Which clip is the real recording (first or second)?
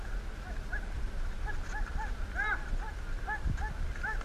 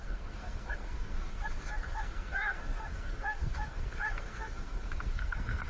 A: first